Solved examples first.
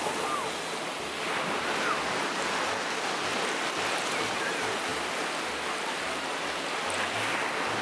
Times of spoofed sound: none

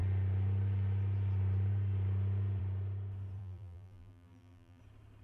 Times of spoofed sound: 3.4-4.8 (vocoder, BigVGAN v2)

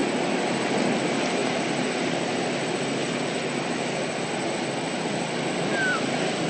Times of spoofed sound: none